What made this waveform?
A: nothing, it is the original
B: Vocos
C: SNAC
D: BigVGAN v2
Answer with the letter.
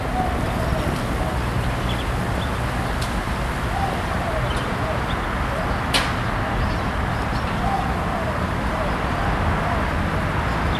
A